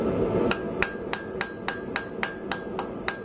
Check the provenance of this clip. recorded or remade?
recorded